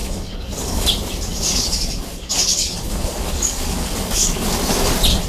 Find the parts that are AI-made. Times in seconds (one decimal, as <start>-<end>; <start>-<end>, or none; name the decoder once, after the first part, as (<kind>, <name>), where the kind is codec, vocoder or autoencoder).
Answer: 0.0-0.9 (codec, DAC); 1.3-4.5

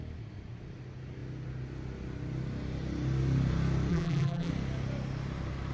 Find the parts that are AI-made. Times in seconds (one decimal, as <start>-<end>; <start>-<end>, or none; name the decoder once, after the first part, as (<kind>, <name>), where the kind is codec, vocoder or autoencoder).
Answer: 3.9-4.5 (vocoder, BigVGAN v2)

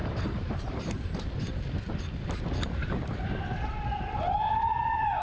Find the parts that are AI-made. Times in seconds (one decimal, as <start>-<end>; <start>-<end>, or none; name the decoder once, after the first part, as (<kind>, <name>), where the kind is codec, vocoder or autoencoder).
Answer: 0.0-2.0 (vocoder, BigVGAN v2); 2.8-3.7

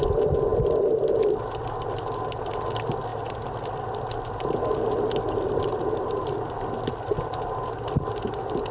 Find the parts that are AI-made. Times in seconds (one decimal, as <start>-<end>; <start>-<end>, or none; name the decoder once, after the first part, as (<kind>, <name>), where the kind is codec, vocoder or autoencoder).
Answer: none

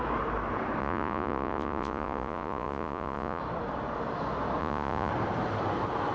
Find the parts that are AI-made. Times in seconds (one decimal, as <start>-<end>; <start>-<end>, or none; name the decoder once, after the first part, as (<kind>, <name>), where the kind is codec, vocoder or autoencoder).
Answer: 0.8-3.4 (vocoder, Vocos); 4.6-5.1

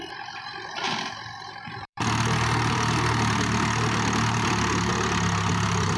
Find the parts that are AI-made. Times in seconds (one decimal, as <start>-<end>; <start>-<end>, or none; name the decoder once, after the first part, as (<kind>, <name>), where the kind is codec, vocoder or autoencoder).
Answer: 0.0-4.9 (vocoder, BigVGAN v2); 5.5-6.0

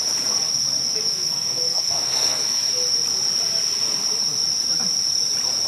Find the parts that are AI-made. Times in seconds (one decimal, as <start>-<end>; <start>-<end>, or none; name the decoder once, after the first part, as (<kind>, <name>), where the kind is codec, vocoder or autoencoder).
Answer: 0.8-2.6 (codec, SNAC)